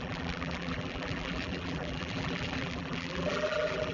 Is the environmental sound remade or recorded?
remade